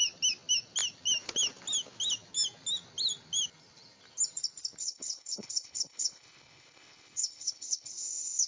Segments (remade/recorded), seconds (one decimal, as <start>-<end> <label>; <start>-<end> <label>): 0.0-4.8 recorded; 4.8-8.5 remade